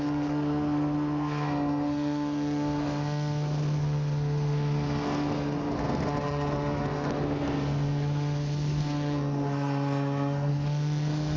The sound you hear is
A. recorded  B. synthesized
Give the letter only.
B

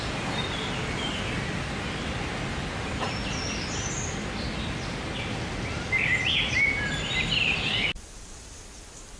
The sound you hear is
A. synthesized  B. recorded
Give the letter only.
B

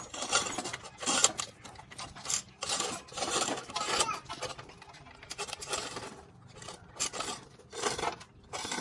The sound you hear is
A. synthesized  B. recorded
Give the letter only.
B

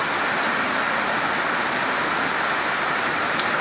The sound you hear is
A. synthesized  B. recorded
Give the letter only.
B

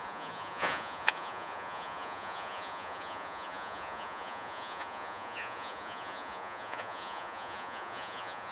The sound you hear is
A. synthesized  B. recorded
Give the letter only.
A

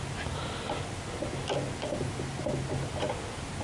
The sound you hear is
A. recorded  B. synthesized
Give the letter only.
A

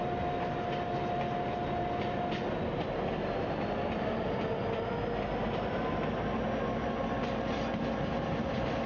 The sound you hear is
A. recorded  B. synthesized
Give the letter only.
A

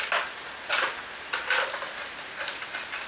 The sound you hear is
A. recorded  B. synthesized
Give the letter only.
A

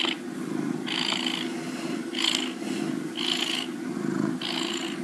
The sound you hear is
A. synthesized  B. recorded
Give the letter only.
B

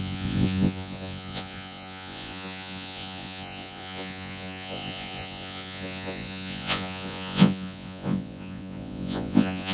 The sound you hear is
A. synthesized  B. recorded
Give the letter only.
A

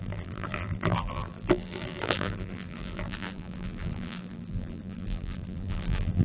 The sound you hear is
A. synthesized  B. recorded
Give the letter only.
A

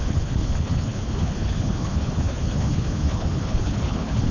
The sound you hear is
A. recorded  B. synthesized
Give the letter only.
B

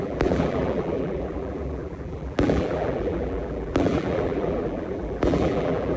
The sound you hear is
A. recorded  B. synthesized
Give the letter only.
B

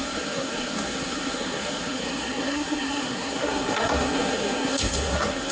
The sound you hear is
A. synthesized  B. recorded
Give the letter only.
A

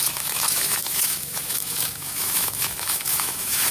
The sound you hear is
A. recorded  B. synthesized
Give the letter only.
B